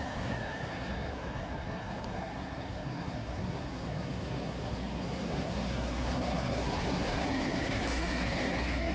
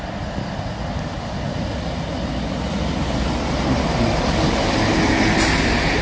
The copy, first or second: first